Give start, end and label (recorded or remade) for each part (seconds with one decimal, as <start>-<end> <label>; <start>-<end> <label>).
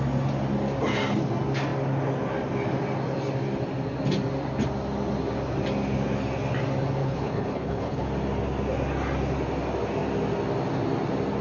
0.0-7.0 recorded; 7.0-8.0 remade; 8.0-11.4 recorded